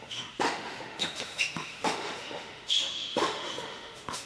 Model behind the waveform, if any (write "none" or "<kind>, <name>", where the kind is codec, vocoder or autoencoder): autoencoder, DAC-VAE